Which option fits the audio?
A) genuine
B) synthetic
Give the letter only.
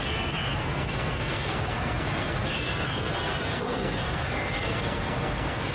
B